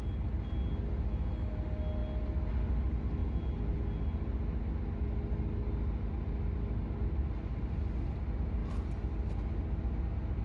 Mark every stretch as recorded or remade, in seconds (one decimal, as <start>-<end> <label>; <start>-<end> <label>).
0.0-3.2 recorded; 3.2-3.8 remade; 3.8-10.4 recorded